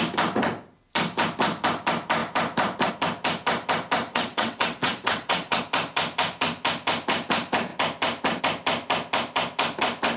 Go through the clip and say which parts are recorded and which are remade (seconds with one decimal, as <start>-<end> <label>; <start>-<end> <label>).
0.0-4.1 recorded; 4.1-5.6 remade; 5.6-10.2 recorded